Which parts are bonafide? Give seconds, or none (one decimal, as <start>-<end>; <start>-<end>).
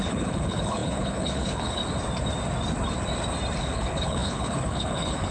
1.8-3.6